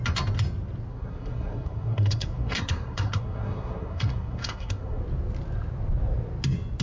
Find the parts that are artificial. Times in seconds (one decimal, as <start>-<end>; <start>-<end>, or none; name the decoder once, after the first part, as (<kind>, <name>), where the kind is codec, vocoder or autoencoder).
0.9-5.0 (codec, SNAC)